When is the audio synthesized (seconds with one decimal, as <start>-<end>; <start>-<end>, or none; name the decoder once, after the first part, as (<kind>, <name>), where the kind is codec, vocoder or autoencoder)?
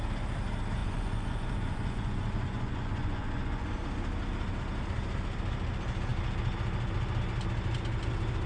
0.8-3.8 (vocoder, Vocos)